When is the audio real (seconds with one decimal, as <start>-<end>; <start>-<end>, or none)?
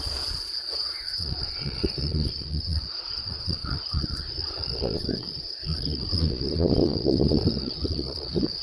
none